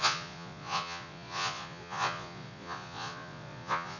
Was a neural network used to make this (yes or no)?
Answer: yes